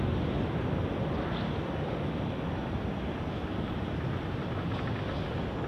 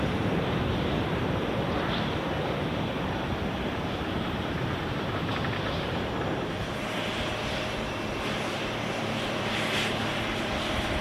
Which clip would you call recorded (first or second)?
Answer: first